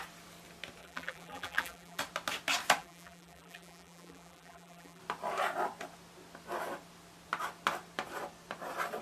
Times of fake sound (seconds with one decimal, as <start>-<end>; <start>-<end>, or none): 0.8-2.0; 2.8-5.0